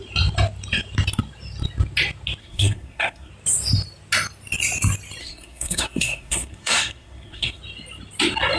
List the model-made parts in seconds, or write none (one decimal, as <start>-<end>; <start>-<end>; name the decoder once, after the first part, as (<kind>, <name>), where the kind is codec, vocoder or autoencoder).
2.4-3.3 (codec, SNAC); 5.2-7.6